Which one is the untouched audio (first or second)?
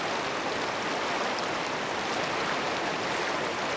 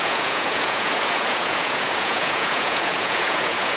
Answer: first